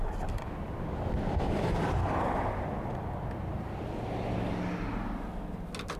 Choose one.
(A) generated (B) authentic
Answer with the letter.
B